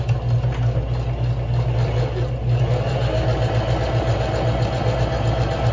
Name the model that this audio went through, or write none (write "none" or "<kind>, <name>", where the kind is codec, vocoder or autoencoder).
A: none